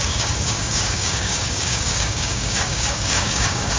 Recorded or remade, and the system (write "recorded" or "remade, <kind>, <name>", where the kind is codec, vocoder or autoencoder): remade, codec, DAC